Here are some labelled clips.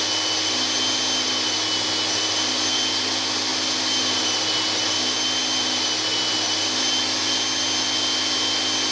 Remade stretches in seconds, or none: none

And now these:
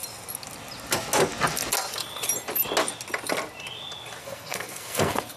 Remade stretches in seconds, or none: 4.2-5.4 (codec, SNAC)

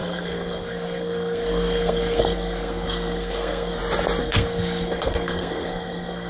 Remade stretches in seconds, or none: 0.0-3.8 (codec, SNAC); 4.2-6.3

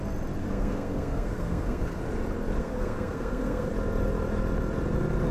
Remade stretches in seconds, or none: 0.4-2.0 (codec, SNAC); 2.6-3.7

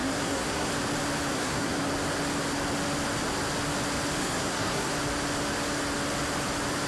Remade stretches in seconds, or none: 0.0-0.7 (codec, SNAC); 1.3-1.8; 4.2-4.9

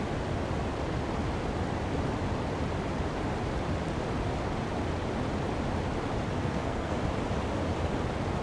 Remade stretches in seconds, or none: 6.4-7.0 (codec, SNAC)

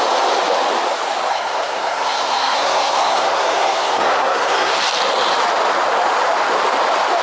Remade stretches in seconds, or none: 1.3-4.8 (codec, SNAC)